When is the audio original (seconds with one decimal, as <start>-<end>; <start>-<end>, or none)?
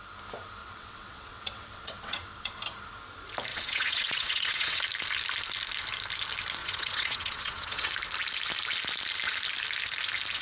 0.0-0.6; 2.6-3.5; 4.8-6.6; 7.9-10.4